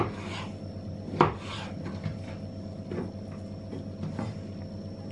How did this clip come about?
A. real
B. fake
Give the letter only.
A